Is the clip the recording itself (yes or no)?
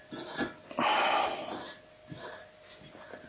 yes